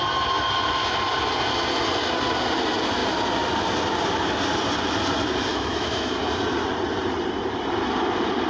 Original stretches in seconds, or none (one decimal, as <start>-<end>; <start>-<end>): 0.0-5.5; 6.1-8.5